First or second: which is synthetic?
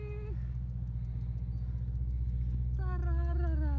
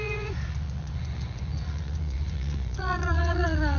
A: second